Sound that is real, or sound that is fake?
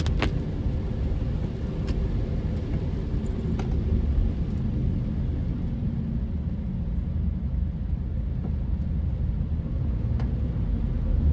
real